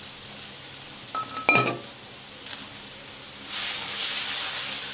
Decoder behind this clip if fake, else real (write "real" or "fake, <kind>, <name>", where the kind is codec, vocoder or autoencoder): real